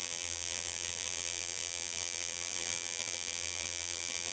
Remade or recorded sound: remade